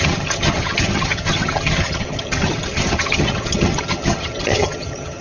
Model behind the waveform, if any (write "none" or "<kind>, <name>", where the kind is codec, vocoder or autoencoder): vocoder, HiFi-GAN